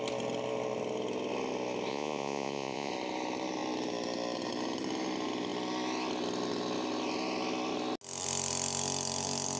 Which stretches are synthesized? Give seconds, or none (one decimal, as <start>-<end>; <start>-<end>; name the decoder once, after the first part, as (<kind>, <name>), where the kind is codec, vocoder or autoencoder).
1.9-2.9 (vocoder, Vocos)